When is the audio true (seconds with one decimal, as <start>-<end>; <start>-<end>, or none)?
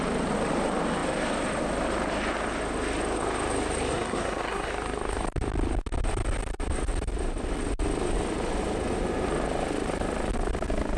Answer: 0.0-3.9; 4.7-11.0